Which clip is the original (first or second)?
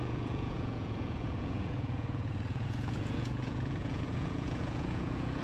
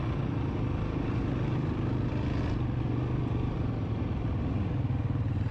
second